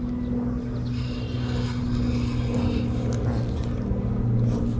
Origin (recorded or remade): recorded